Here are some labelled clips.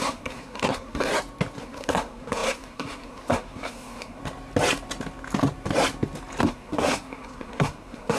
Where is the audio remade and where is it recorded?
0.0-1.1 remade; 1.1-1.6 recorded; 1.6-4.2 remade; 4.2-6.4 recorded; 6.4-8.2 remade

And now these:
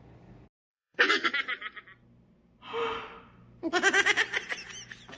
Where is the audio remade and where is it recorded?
0.0-0.7 recorded; 0.7-1.3 remade; 1.3-5.2 recorded

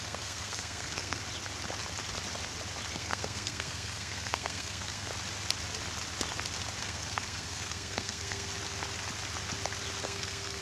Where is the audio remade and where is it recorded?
0.0-1.2 remade; 1.2-2.9 recorded; 2.9-5.1 remade; 5.1-6.8 recorded; 6.8-8.5 remade; 8.5-10.0 recorded; 10.0-10.6 remade

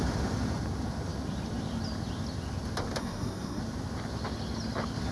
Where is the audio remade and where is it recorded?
0.0-3.0 recorded; 3.0-3.6 remade; 3.6-5.1 recorded